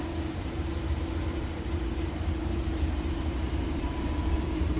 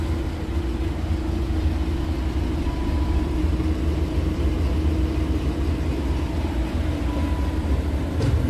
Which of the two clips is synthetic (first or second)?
first